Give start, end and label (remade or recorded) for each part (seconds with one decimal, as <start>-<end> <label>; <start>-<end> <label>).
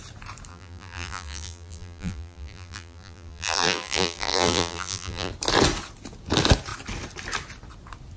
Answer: 0.0-0.5 recorded; 0.5-5.3 remade; 5.3-8.2 recorded